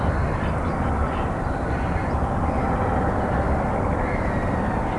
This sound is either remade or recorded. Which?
recorded